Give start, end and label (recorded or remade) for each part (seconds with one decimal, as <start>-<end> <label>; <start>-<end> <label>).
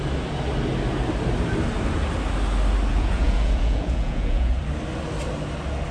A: 0.0-2.9 recorded; 2.9-4.6 remade; 4.6-5.9 recorded